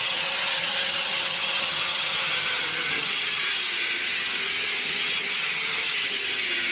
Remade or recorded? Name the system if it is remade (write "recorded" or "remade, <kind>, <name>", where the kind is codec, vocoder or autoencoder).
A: remade, vocoder, HiFi-GAN